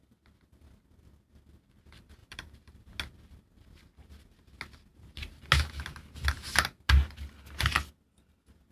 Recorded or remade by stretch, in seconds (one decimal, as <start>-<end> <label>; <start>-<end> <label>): 0.0-2.2 recorded; 2.2-2.9 remade; 2.9-4.9 recorded; 4.9-5.4 remade; 5.4-8.7 recorded